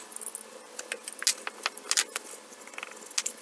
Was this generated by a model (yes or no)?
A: no